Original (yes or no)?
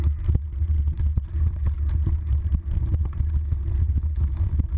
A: yes